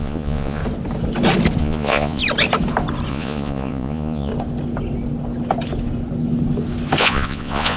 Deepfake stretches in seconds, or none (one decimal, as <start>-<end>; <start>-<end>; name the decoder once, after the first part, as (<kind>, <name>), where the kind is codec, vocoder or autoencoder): 0.0-0.6 (vocoder, Vocos); 1.6-2.2; 3.1-4.3; 7.0-7.8